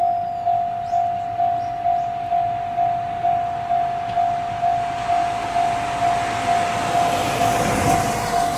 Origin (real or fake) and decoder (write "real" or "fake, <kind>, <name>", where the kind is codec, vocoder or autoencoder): real